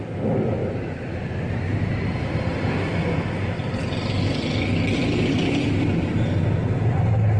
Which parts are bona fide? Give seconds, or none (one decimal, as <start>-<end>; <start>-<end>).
0.0-0.6; 1.2-7.4